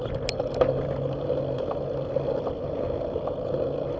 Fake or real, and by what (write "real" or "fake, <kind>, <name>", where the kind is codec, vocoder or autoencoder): real